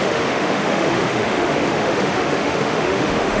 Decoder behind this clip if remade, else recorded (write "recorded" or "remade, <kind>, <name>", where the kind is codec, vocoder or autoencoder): remade, autoencoder, DAC-VAE